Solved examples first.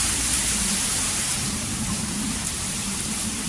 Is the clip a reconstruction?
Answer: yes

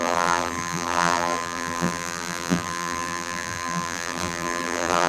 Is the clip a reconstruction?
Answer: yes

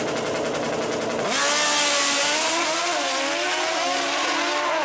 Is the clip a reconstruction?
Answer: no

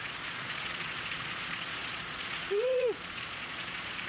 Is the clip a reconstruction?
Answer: yes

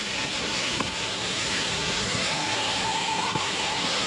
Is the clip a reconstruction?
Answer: yes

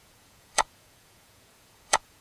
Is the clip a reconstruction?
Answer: yes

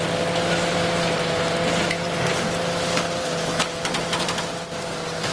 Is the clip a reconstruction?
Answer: no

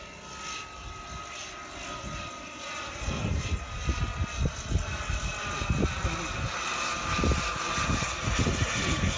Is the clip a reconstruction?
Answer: no